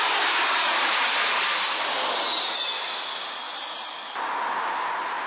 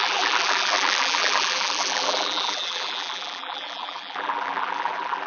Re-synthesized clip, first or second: second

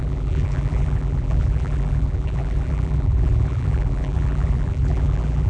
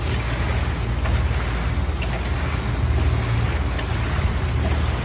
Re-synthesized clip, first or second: first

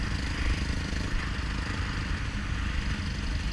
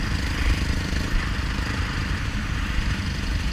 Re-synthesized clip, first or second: second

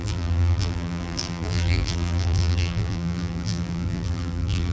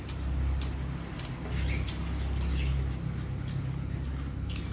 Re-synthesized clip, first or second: first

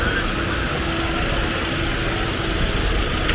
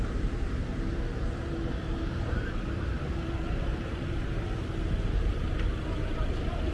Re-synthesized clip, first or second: second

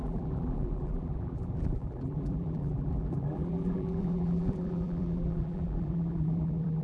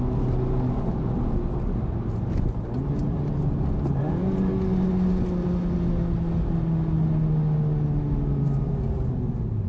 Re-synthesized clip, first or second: first